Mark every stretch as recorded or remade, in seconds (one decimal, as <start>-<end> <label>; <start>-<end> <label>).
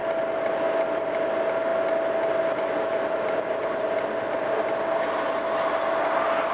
0.0-6.5 recorded